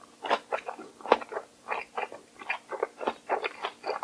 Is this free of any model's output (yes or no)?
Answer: yes